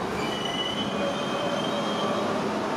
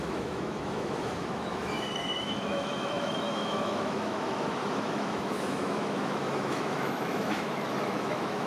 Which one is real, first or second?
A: first